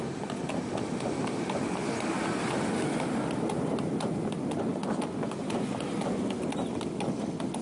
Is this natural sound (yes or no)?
yes